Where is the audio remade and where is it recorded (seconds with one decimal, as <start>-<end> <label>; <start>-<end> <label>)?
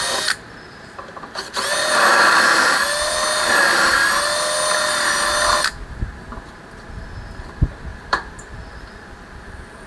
0.0-7.9 recorded; 7.9-9.9 remade